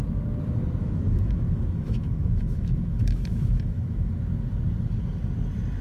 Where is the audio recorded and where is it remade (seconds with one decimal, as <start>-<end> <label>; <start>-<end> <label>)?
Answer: 0.0-0.8 recorded; 0.8-4.1 remade; 4.1-5.8 recorded